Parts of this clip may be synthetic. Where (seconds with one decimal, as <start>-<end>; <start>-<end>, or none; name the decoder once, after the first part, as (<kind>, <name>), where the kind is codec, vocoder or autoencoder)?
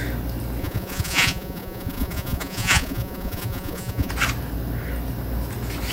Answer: 0.6-4.1 (vocoder, Vocos)